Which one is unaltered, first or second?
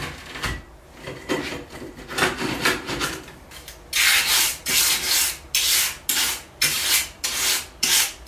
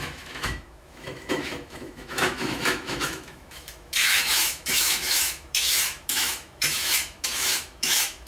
first